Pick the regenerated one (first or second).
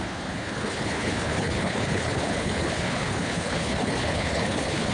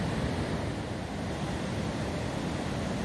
first